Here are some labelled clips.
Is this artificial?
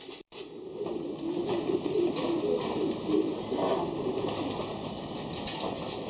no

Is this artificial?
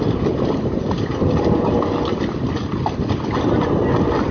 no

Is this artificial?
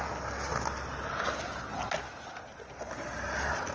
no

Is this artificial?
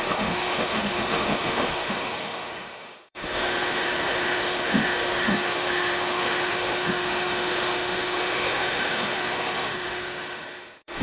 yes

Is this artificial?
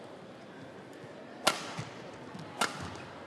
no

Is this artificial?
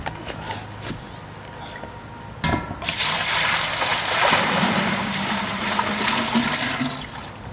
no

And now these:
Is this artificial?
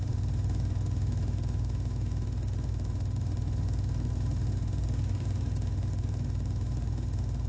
yes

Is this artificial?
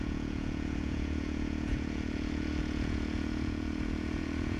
yes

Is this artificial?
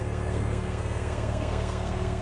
yes